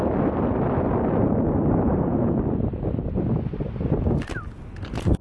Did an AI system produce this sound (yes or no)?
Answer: no